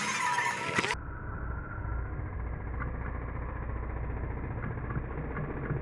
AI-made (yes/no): no